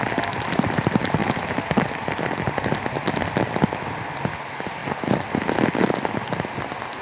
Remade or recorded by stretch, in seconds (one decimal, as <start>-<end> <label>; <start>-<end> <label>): 0.0-1.2 recorded; 1.2-2.3 remade; 2.3-7.0 recorded